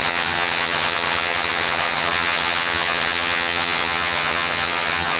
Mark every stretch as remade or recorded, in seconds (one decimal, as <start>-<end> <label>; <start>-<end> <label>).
0.0-5.2 remade